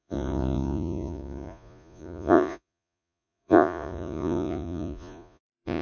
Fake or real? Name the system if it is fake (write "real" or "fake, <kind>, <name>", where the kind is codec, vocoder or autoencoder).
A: fake, vocoder, Vocos